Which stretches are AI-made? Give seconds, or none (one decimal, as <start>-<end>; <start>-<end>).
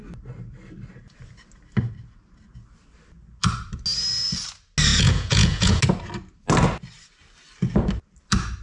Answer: 4.9-5.8